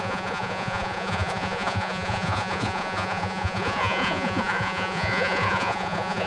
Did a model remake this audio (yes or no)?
yes